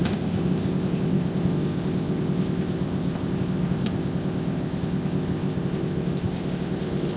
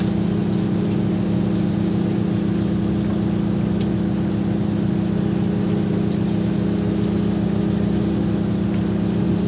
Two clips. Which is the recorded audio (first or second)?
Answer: second